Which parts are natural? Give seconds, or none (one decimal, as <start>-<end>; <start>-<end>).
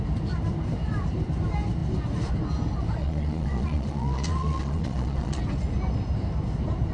0.0-3.0; 5.4-6.9